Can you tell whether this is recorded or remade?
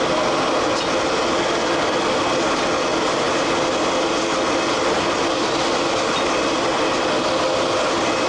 recorded